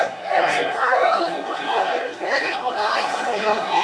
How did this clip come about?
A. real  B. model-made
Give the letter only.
B